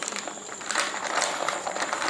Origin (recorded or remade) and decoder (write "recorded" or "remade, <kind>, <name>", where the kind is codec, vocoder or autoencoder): remade, vocoder, BigVGAN v2